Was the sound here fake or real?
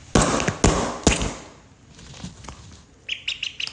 real